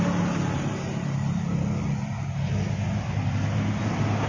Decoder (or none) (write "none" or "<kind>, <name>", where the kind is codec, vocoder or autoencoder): none